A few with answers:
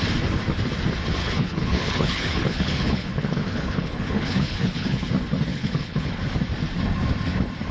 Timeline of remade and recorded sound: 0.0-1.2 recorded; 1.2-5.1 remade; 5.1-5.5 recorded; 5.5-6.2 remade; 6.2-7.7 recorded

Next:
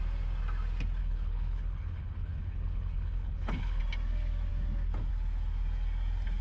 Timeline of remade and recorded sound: 0.0-1.0 recorded; 1.0-3.8 remade; 3.8-6.4 recorded

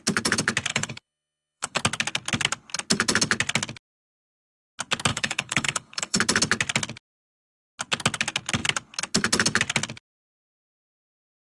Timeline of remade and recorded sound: 0.0-0.7 recorded; 0.7-1.8 remade; 1.8-5.1 recorded; 5.1-6.2 remade; 6.2-11.5 recorded

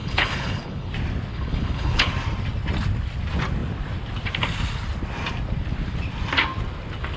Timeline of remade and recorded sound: 0.0-0.9 remade; 0.9-1.3 recorded; 1.3-2.1 remade; 2.1-7.2 recorded

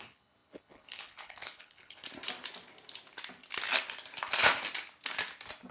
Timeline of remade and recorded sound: 0.0-2.0 remade; 2.0-5.7 recorded